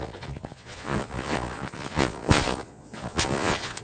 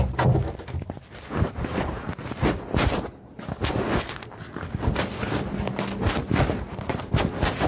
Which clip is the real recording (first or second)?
second